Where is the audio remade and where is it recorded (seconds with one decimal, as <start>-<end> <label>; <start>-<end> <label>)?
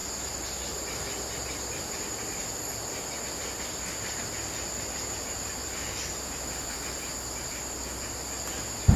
0.0-9.0 recorded